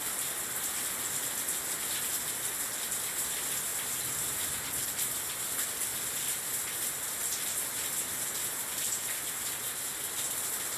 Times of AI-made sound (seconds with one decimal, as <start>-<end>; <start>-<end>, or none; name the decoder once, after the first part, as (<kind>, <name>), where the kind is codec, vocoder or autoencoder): none